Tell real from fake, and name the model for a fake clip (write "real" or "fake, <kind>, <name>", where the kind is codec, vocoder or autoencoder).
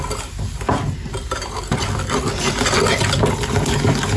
real